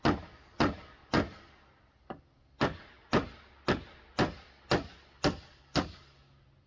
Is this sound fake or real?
real